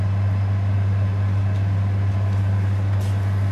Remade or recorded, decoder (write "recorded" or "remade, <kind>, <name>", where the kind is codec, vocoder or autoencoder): recorded